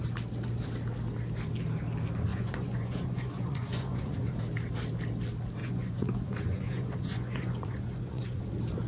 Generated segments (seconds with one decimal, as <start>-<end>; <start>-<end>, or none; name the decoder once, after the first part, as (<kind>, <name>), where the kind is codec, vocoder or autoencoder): 2.3-4.3 (vocoder, Vocos); 5.6-8.5

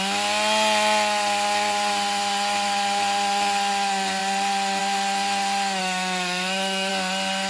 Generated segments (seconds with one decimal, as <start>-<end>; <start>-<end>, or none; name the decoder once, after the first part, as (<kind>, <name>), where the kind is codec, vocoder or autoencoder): 5.8-6.9 (autoencoder, DAC-VAE)

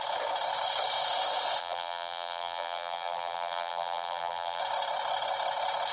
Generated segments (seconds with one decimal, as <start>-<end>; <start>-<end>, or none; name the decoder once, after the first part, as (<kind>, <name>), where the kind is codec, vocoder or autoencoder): 1.6-4.6 (vocoder, BigVGAN v2)

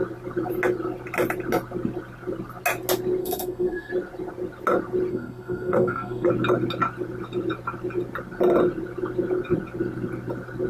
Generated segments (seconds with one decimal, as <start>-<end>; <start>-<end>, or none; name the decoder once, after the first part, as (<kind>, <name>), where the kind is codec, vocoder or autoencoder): 3.2-3.9 (codec, SNAC); 5.1-6.3

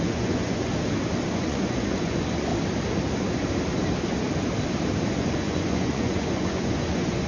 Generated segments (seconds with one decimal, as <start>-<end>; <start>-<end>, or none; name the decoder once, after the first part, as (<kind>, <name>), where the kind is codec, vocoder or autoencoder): 0.0-0.7 (vocoder, Vocos); 1.3-2.5; 5.1-7.3

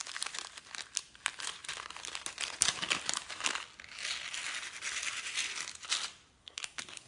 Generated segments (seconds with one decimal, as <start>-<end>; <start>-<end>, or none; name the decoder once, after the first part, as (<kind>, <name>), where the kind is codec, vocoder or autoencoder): 6.4-7.1 (codec, SNAC)